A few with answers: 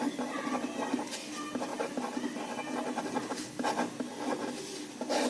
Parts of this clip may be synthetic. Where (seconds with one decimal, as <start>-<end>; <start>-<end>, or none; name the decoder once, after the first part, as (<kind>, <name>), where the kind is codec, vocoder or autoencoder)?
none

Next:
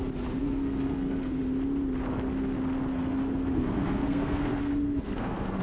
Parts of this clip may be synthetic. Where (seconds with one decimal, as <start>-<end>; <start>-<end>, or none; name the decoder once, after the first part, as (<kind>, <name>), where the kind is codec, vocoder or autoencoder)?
0.4-1.4 (codec, SNAC); 2.9-5.6

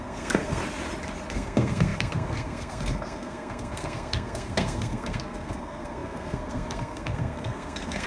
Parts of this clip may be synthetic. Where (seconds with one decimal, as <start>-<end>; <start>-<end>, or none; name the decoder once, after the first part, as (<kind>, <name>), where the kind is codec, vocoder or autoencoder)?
0.0-0.6 (codec, SNAC); 1.3-8.1

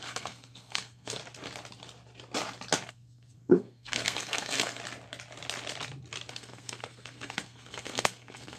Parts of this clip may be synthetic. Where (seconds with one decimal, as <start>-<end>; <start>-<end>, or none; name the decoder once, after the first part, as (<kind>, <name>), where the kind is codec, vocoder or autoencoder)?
0.0-1.2 (codec, SNAC); 2.9-4.8; 6.3-8.6

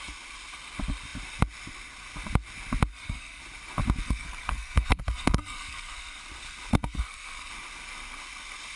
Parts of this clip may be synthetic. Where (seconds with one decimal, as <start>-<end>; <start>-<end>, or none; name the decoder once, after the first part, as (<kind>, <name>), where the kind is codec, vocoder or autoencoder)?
2.9-3.4 (codec, SNAC); 4.0-6.2; 6.7-7.5

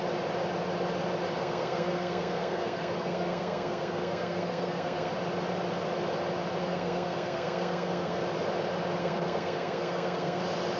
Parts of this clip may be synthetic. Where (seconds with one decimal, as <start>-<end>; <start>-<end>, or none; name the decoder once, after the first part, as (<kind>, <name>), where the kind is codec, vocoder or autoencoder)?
1.4-5.1 (codec, SNAC); 6.6-8.2; 9.0-10.4

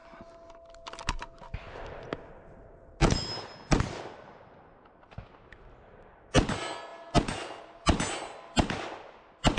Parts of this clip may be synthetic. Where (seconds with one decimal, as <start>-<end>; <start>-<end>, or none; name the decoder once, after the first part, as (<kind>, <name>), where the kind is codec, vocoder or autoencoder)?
none